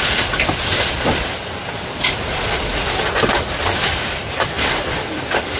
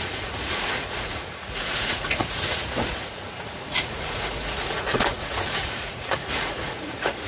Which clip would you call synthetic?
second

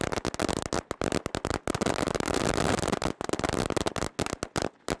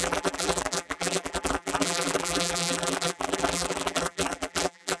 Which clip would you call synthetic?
second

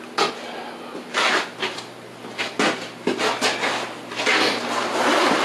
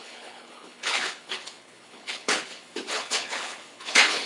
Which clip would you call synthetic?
second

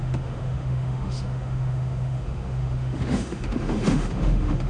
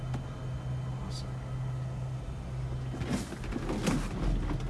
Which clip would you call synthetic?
first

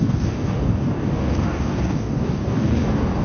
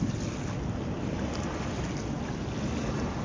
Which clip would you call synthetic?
first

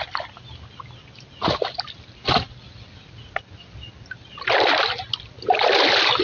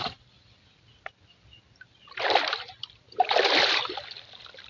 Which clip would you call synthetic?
second